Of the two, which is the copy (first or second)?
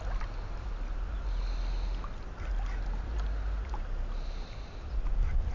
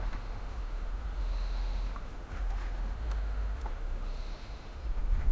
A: second